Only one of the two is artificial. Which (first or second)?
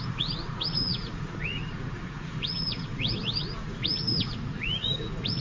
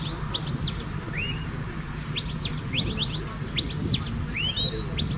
first